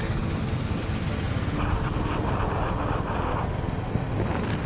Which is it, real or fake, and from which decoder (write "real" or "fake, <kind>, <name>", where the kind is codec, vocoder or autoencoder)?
real